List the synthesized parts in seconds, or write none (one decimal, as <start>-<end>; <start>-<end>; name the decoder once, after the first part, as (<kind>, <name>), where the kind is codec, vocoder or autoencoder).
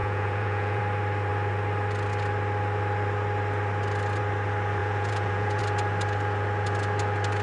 0.0-0.8 (vocoder, Vocos); 4.8-5.6